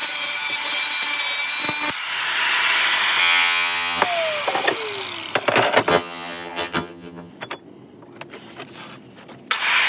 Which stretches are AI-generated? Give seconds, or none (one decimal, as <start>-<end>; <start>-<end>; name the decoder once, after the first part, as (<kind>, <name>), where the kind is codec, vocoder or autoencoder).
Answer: 3.2-4.0 (vocoder, HiFi-GAN); 5.9-7.3